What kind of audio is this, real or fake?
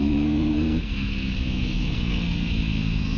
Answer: fake